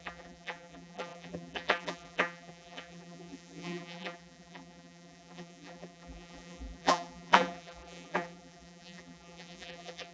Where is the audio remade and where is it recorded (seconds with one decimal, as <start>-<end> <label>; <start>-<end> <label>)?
0.0-10.1 remade